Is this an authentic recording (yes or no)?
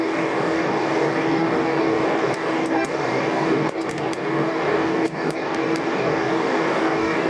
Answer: no